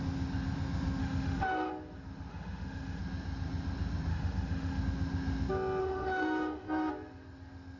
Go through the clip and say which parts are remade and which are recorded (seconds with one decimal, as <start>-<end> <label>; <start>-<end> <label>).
0.0-1.0 recorded; 1.0-1.7 remade; 1.7-2.3 recorded; 2.3-3.0 remade; 3.0-4.1 recorded; 4.1-4.8 remade; 4.8-5.8 recorded; 5.8-6.9 remade; 6.9-7.8 recorded